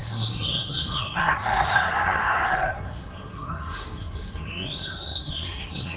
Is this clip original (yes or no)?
no